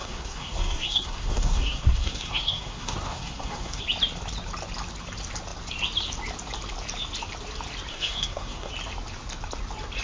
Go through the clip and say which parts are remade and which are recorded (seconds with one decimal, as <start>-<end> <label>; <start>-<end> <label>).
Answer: 0.0-3.8 remade; 3.8-7.9 recorded; 7.9-8.7 remade; 8.7-10.0 recorded